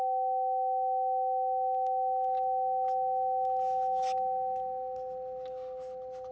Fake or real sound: real